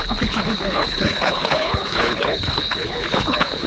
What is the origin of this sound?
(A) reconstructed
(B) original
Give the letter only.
A